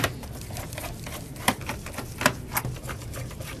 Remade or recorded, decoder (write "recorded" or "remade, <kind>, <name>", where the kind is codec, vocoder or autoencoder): recorded